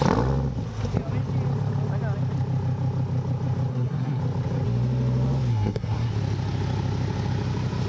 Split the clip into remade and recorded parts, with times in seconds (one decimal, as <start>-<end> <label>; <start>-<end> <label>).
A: 0.0-3.7 recorded; 3.7-4.2 remade; 4.2-5.5 recorded; 5.5-6.1 remade; 6.1-7.9 recorded